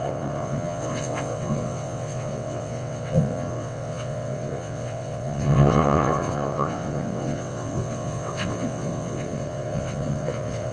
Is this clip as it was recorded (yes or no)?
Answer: no